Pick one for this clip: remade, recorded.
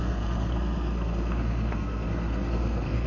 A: remade